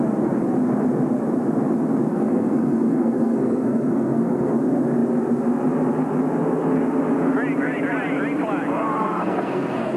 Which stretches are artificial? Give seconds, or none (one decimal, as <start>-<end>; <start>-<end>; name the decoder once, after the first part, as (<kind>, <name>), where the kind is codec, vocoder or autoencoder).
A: 2.1-4.5 (codec, SNAC); 9.0-10.0